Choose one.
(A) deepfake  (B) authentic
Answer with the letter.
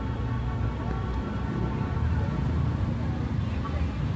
B